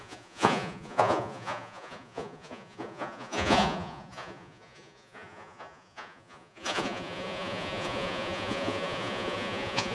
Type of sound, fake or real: fake